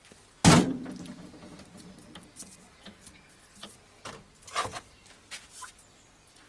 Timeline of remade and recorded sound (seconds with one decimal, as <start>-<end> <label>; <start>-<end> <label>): 0.0-6.5 recorded